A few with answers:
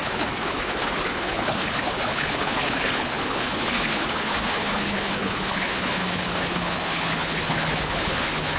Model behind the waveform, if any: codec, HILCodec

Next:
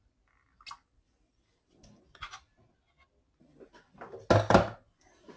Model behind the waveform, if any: none